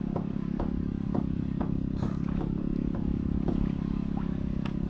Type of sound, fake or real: fake